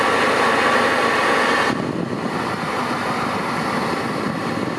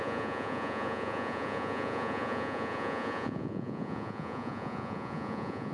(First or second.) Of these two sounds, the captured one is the first